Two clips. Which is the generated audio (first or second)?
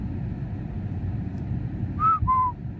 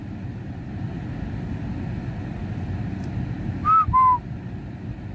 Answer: first